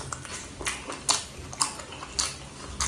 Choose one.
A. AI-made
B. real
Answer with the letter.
B